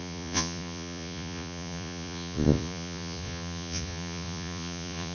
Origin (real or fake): fake